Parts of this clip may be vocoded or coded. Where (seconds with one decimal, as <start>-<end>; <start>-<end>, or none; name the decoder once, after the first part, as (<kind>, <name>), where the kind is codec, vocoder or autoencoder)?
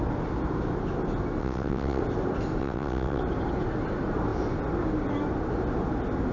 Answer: 1.4-2.0 (vocoder, WaveNeXt); 2.6-3.2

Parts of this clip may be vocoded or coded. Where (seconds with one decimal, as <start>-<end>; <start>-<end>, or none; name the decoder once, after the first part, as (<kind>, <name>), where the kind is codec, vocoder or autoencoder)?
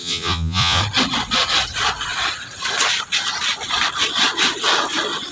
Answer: 0.0-0.8 (vocoder, Vocos)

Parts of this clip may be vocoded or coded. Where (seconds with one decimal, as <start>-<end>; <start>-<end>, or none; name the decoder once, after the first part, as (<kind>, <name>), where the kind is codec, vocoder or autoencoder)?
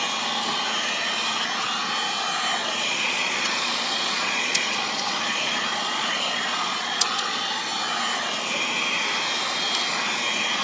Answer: 2.6-7.6 (vocoder, Vocos)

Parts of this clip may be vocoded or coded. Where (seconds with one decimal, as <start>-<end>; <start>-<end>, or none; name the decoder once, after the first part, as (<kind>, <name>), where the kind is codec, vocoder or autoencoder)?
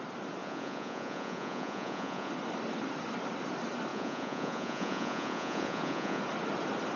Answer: 0.4-2.3 (vocoder, Vocos); 3.9-6.2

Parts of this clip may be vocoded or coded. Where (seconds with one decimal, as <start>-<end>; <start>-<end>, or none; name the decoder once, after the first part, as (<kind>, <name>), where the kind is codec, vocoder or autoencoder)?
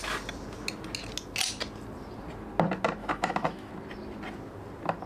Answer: 3.0-3.7 (autoencoder, DAC-VAE)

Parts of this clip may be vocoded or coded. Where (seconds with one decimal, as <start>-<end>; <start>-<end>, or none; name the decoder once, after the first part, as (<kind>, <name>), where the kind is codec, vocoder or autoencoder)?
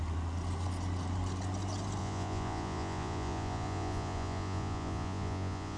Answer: 2.0-5.8 (vocoder, Vocos)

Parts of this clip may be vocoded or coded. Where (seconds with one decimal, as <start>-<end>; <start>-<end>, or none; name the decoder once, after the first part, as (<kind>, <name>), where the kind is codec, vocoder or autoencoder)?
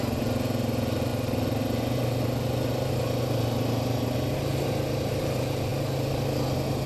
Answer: none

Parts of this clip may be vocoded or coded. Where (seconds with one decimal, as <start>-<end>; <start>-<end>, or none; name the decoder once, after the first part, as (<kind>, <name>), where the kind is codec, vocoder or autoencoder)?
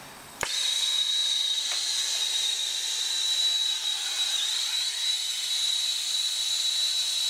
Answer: none